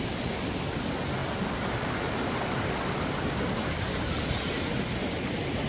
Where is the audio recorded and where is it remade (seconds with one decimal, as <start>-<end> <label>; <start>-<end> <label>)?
0.0-5.7 recorded